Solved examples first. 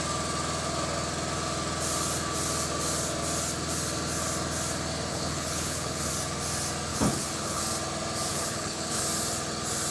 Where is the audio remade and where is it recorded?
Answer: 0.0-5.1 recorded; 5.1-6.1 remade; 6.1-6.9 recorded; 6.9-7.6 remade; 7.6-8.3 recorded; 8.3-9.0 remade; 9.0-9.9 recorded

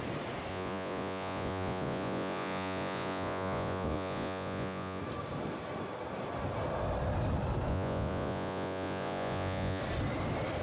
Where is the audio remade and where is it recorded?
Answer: 0.0-0.5 recorded; 0.5-5.0 remade; 5.0-7.7 recorded; 7.7-9.8 remade; 9.8-10.6 recorded

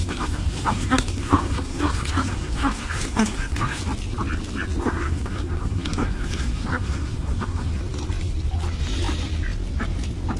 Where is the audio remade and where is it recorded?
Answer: 0.0-3.8 remade; 3.8-4.8 recorded; 4.8-7.7 remade; 7.7-10.4 recorded

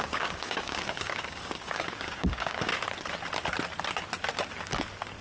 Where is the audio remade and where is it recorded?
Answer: 0.0-2.7 remade; 2.7-5.2 recorded

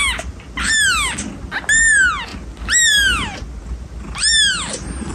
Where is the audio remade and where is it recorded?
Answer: 0.0-5.1 recorded

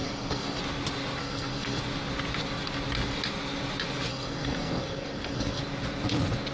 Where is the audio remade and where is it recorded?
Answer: 0.0-0.6 remade; 0.6-1.2 recorded; 1.2-1.8 remade; 1.8-4.1 recorded; 4.1-5.6 remade; 5.6-6.5 recorded

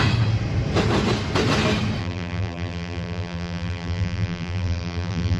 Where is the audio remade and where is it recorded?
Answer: 0.0-2.0 recorded; 2.0-5.4 remade

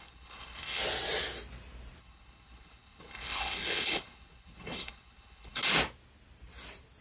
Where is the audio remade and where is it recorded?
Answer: 0.0-0.8 remade; 0.8-2.0 recorded; 2.0-5.6 remade; 5.6-7.0 recorded